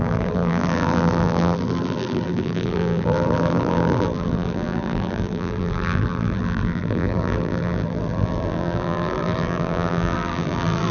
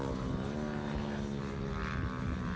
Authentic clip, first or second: second